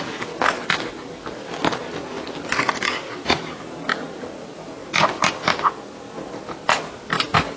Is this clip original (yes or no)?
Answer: yes